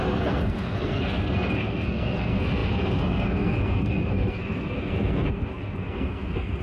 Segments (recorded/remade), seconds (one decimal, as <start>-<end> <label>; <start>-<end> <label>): 0.0-6.6 remade